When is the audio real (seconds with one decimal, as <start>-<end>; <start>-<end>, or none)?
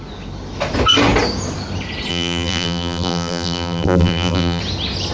0.0-2.1; 4.6-5.1